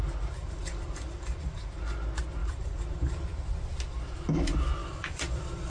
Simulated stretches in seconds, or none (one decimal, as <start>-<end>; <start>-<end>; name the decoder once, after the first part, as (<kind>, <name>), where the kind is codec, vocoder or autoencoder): 0.4-1.6 (vocoder, BigVGAN v2); 2.4-3.1; 4.8-5.7